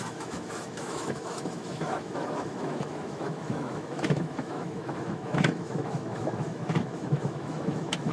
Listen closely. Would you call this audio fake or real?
fake